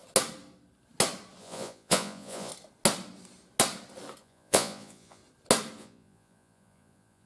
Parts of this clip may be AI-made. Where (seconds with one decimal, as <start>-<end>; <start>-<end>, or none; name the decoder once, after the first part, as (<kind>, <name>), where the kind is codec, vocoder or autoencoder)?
1.4-2.5 (vocoder, Vocos); 4.2-5.2; 5.8-7.3